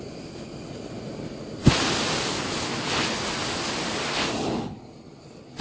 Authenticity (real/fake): real